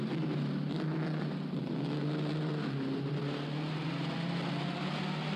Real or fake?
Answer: real